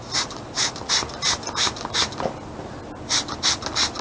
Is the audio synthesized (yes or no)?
no